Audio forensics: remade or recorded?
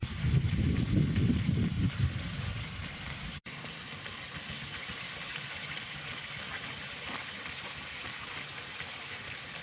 recorded